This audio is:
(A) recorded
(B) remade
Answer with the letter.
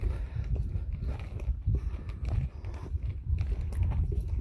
A